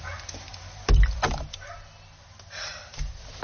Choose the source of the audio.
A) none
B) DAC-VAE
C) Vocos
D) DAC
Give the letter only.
A